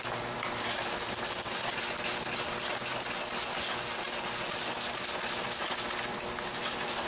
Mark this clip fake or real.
real